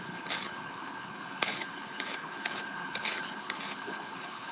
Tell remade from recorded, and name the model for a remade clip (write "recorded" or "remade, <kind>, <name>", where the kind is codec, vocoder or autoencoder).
remade, codec, HILCodec